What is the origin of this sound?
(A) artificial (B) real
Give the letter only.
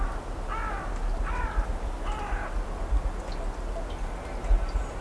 B